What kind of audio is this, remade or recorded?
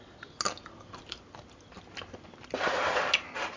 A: recorded